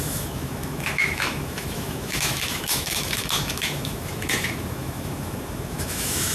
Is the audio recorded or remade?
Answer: remade